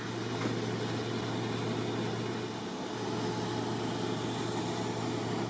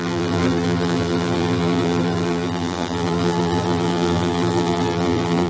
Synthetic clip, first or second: second